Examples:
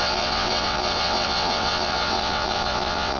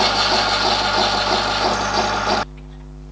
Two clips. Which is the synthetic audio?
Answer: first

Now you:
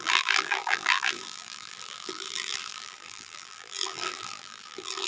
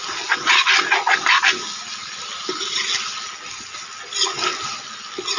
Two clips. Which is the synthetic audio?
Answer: first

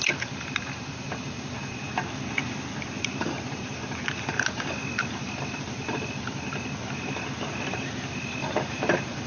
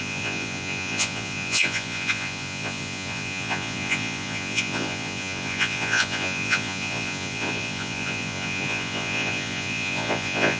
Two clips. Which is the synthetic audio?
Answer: second